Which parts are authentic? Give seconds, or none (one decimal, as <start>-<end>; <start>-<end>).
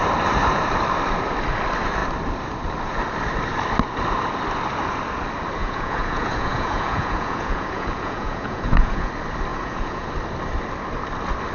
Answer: 0.0-5.6; 9.1-9.5; 10.1-11.5